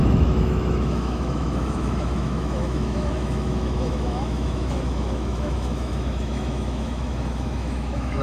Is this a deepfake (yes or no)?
yes